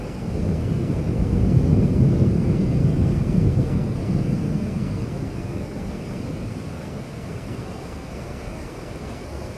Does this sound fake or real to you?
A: fake